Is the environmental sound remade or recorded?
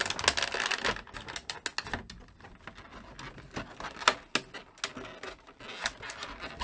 recorded